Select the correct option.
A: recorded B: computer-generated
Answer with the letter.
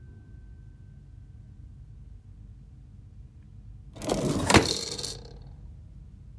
A